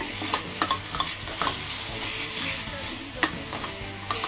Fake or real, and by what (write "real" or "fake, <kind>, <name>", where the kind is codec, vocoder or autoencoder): real